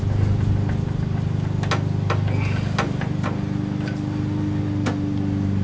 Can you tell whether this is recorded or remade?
recorded